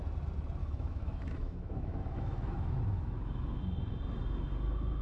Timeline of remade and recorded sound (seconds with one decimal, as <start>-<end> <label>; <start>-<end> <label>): 0.0-0.6 recorded; 0.6-3.6 remade; 3.6-5.0 recorded